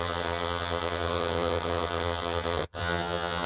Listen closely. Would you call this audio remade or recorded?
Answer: remade